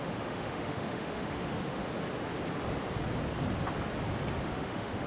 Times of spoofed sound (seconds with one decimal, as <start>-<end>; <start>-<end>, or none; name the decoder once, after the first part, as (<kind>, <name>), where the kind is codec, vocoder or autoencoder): 0.0-1.8 (autoencoder, DAC-VAE); 4.4-5.1